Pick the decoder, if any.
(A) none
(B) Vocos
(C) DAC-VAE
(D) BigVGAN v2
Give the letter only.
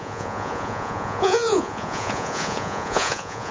B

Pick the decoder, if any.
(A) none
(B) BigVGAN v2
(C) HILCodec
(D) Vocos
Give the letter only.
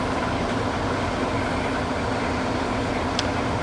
A